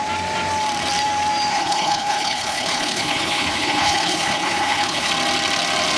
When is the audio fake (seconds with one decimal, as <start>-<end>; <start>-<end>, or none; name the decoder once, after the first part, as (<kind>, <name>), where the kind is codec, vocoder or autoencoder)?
1.5-5.1 (codec, HILCodec)